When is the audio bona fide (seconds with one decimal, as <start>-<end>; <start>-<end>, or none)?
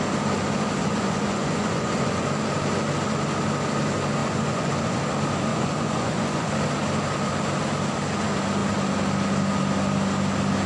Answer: 0.0-0.8; 2.3-4.2; 5.0-5.5; 6.5-10.7